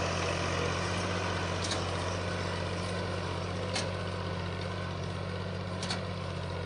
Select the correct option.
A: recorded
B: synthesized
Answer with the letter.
A